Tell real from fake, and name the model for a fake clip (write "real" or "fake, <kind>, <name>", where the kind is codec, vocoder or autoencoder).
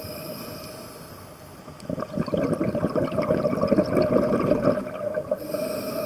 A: fake, vocoder, BigVGAN v2